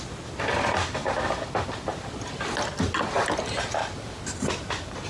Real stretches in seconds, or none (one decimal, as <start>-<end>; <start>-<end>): 0.0-5.1